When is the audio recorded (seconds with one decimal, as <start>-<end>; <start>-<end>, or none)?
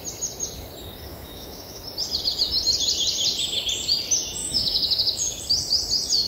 0.0-1.1; 1.8-4.4; 5.2-6.3